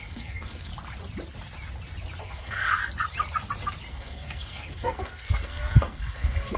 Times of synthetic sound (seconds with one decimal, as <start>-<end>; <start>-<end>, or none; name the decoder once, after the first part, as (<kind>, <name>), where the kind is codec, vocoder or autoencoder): 0.0-0.7 (codec, SNAC); 2.2-2.8; 3.9-6.6